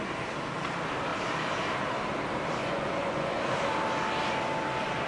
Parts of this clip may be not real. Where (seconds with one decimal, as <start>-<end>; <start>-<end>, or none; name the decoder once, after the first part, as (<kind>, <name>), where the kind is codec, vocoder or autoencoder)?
2.6-3.4 (vocoder, Vocos)